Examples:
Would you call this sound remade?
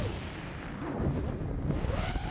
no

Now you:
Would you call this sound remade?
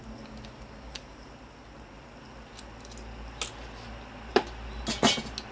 no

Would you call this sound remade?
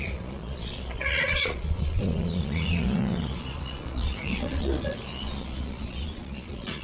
yes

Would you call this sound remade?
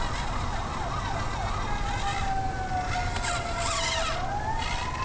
no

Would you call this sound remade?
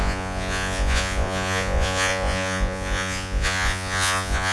yes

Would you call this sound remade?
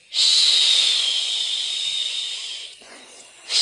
yes